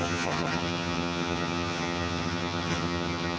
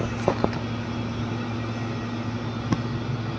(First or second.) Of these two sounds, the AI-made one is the first